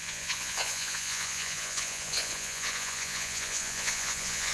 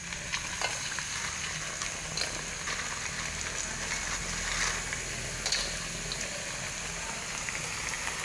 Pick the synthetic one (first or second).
first